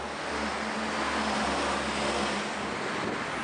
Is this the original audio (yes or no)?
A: yes